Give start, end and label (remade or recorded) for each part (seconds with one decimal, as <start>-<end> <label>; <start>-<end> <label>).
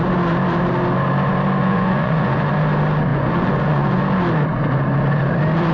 0.0-1.6 recorded; 1.6-2.5 remade; 2.5-3.1 recorded; 3.1-4.0 remade; 4.0-5.7 recorded